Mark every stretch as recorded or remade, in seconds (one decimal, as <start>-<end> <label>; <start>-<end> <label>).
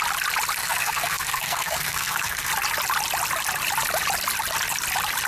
0.0-0.6 recorded; 0.6-2.5 remade; 2.5-5.3 recorded